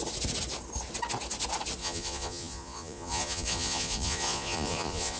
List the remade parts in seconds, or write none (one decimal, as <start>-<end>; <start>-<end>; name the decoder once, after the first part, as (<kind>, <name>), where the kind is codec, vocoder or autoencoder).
1.8-5.2 (vocoder, Vocos)